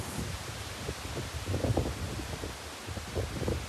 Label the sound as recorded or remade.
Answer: recorded